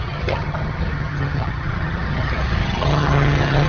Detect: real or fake fake